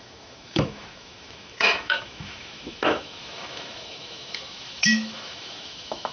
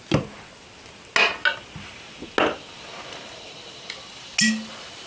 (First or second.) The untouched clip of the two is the second